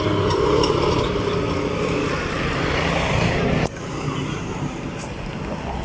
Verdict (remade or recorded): recorded